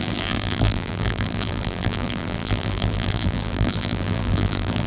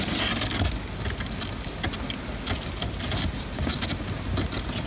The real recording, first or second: second